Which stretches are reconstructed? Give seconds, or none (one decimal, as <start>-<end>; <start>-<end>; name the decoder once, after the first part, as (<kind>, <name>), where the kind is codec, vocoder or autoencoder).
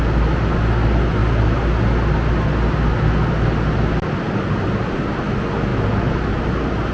none